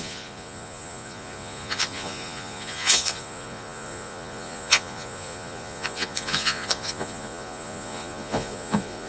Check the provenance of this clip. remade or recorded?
remade